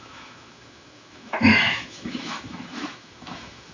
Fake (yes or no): yes